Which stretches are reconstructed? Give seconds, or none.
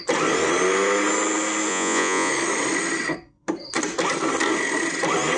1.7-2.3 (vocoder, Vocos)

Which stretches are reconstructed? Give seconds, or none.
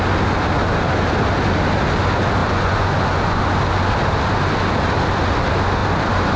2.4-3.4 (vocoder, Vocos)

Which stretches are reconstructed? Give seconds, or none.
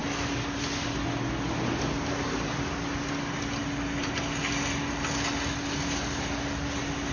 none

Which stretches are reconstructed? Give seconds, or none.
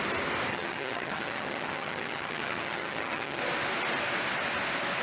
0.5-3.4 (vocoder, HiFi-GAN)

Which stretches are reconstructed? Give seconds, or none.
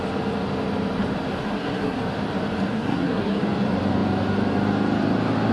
1.4-2.0 (codec, SNAC); 2.7-3.4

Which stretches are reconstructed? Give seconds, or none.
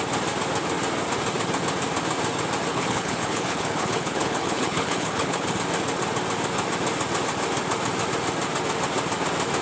2.7-5.6 (codec, HILCodec)